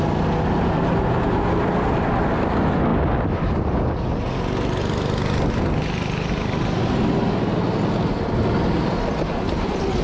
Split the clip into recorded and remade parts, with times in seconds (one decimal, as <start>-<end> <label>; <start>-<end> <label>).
0.0-10.0 recorded